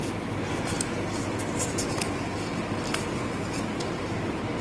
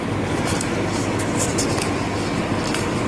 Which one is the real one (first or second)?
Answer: first